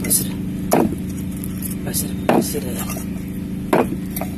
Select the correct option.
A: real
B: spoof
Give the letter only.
A